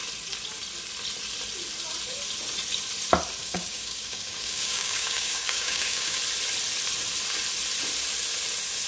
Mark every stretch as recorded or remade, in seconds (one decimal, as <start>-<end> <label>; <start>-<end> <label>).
0.0-3.4 recorded; 3.4-6.2 remade; 6.2-8.9 recorded

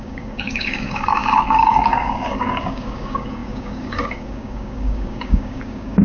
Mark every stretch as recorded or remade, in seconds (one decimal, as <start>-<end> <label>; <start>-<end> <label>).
0.0-6.0 remade

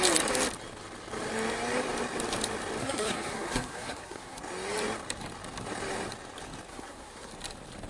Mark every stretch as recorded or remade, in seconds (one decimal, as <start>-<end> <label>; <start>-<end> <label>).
0.0-2.8 recorded; 2.8-4.4 remade; 4.4-6.7 recorded; 6.7-7.3 remade; 7.3-7.9 recorded

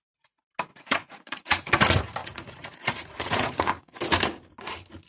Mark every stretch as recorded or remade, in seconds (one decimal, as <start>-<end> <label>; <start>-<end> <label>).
0.0-0.7 recorded; 0.7-1.8 remade; 1.8-2.2 recorded; 2.2-4.0 remade; 4.0-5.1 recorded

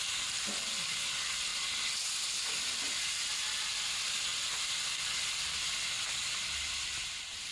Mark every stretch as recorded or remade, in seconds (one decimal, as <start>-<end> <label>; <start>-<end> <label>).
0.0-7.5 recorded

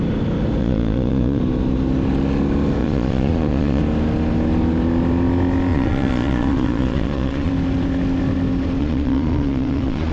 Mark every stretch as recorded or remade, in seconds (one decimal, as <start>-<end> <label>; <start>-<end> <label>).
0.0-0.6 recorded; 0.6-1.4 remade; 1.4-2.8 recorded; 2.8-3.8 remade; 3.8-5.7 recorded; 5.7-7.5 remade; 7.5-8.8 recorded; 8.8-10.1 remade